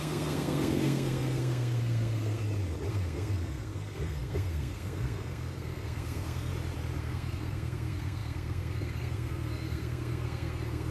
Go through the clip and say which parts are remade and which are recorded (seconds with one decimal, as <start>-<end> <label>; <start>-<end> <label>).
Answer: 0.0-2.4 remade; 2.4-2.9 recorded; 2.9-6.5 remade; 6.5-7.0 recorded; 7.0-10.9 remade

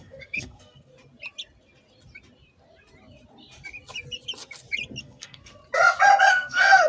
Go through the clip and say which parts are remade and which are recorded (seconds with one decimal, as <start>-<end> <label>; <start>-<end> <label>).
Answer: 0.0-0.9 remade; 0.9-5.0 recorded; 5.0-5.6 remade; 5.6-6.3 recorded; 6.3-6.9 remade

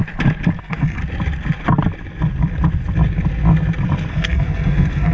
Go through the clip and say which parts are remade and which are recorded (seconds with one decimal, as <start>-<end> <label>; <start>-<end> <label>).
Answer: 0.0-0.6 recorded; 0.6-1.0 remade; 1.0-4.1 recorded; 4.1-5.1 remade

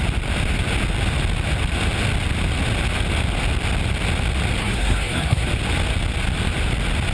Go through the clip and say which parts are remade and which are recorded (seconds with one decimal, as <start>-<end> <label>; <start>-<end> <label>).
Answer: 0.0-4.6 recorded; 4.6-5.5 remade; 5.5-7.1 recorded